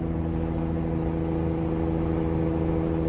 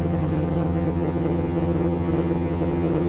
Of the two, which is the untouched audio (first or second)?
first